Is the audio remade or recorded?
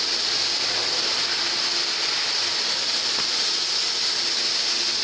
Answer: recorded